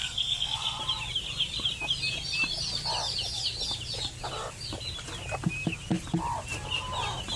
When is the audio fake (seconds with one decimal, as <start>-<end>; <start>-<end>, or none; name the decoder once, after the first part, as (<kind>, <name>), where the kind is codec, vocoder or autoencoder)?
0.0-0.8 (codec, SNAC)